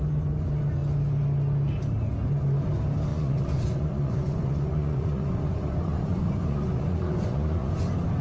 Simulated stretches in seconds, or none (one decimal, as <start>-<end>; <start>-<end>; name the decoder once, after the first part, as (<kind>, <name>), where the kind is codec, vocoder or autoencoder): 3.1-7.7 (vocoder, Vocos)